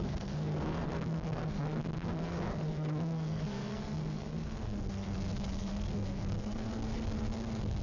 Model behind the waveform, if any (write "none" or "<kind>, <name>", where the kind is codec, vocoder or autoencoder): codec, SNAC